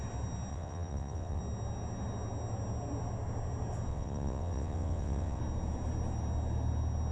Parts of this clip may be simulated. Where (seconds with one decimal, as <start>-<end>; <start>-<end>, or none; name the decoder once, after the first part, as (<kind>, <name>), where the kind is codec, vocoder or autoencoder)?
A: 0.5-1.4 (vocoder, WaveNeXt); 3.9-5.4